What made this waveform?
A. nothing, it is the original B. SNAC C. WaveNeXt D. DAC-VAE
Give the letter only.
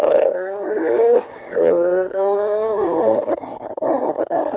B